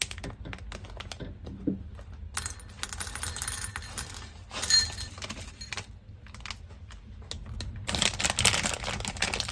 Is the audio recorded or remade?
recorded